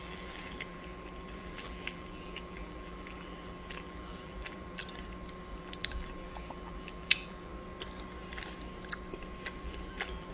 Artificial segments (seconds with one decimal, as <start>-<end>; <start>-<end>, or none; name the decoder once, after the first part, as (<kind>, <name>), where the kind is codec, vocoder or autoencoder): 0.0-4.8 (vocoder, BigVGAN v2); 5.5-7.5; 9.6-10.3